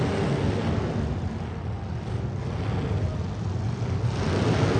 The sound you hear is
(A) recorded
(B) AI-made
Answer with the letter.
A